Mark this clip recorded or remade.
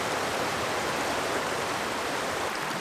recorded